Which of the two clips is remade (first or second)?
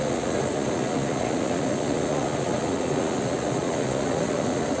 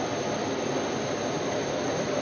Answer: first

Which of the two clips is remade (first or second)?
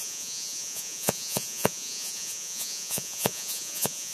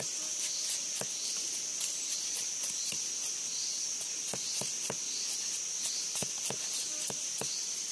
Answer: first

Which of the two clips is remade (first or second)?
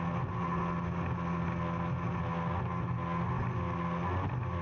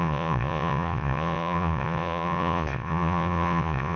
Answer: second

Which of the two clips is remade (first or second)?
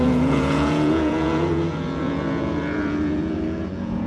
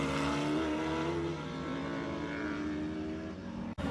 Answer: first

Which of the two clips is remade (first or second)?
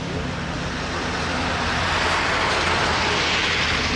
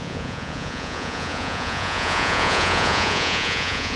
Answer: second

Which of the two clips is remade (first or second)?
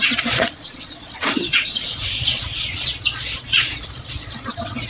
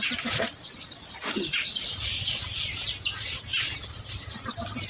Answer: first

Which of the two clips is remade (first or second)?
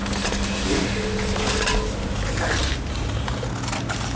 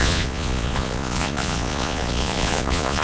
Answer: second